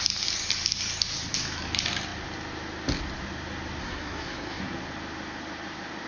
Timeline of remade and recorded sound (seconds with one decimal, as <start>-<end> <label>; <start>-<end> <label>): 0.0-3.8 recorded; 3.8-4.6 remade; 4.6-6.1 recorded